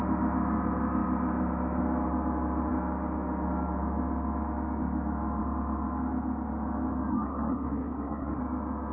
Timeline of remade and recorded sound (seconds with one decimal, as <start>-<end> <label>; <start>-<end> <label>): 0.0-7.1 recorded; 7.1-8.4 remade; 8.4-8.9 recorded